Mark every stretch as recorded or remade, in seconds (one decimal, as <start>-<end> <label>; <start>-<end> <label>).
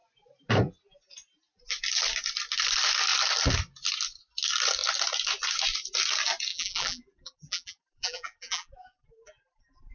0.0-6.5 recorded; 6.5-9.9 remade